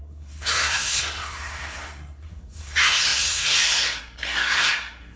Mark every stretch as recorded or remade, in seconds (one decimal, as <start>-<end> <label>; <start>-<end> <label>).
0.0-5.2 remade